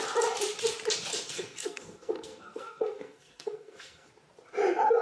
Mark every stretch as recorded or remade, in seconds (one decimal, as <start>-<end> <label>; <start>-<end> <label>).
0.0-1.1 recorded; 1.1-4.1 remade; 4.1-5.0 recorded